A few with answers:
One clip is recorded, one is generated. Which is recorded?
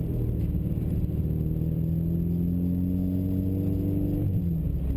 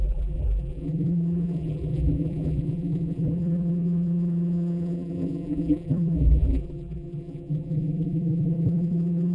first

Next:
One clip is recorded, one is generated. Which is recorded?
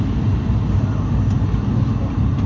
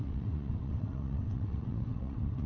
first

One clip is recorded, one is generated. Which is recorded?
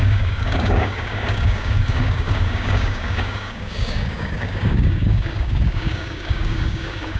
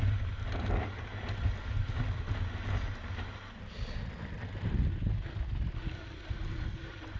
second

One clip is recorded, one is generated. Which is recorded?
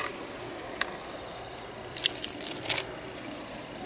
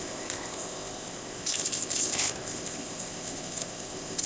first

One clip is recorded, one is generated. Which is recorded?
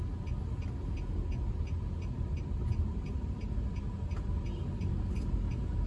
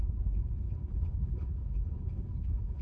first